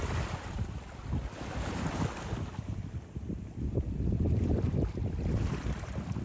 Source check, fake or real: real